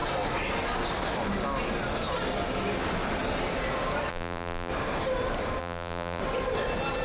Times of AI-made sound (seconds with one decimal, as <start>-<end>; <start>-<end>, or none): 4.1-4.7; 5.6-6.2